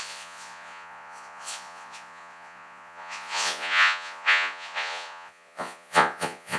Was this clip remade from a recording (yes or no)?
yes